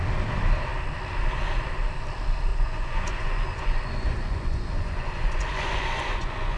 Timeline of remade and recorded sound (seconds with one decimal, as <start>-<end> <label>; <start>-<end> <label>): 0.0-2.5 recorded; 2.5-6.6 remade